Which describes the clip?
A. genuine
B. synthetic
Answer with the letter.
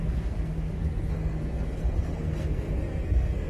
B